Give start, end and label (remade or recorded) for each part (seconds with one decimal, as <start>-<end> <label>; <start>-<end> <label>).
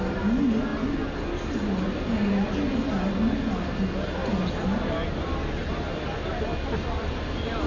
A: 0.0-7.7 recorded